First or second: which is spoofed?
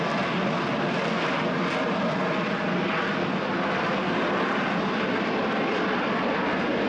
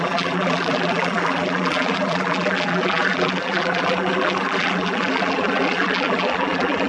second